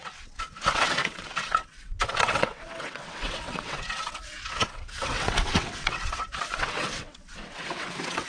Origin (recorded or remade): remade